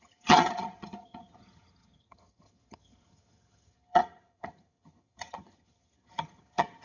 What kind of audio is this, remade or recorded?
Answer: remade